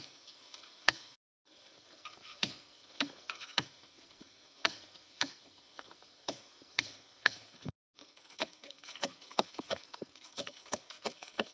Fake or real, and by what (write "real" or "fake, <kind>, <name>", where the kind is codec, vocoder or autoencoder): fake, codec, SNAC